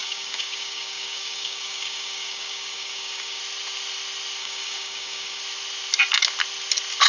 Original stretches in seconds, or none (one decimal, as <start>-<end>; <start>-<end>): 3.4-4.4; 5.4-7.1